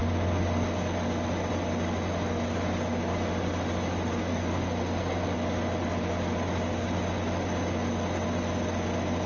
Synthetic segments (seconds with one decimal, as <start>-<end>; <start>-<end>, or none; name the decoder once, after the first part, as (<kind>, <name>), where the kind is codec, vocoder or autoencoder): 4.3-5.2 (codec, SNAC)